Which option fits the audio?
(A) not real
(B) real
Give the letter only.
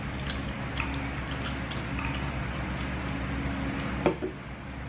B